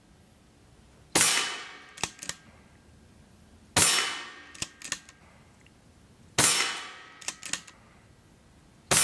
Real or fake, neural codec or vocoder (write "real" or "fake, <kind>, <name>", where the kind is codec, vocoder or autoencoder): real